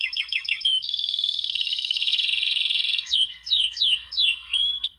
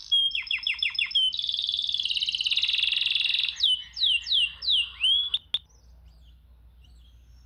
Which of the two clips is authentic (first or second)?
second